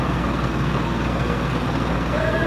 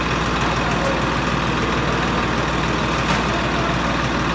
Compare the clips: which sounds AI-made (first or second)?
first